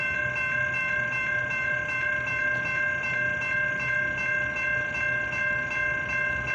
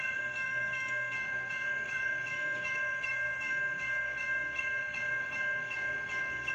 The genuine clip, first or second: first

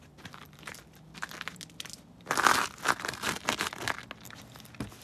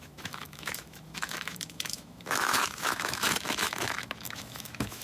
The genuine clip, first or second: first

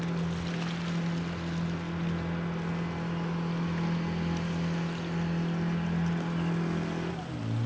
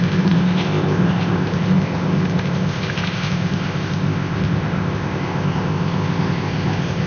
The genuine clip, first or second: first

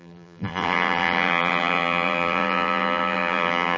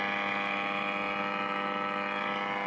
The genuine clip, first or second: second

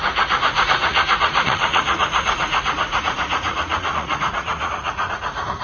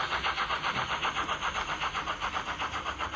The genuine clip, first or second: second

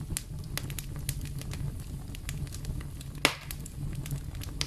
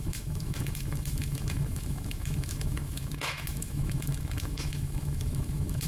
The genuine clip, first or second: first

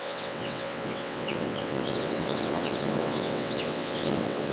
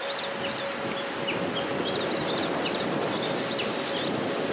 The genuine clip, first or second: second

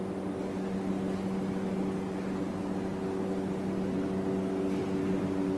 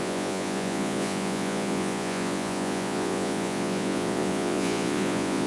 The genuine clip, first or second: first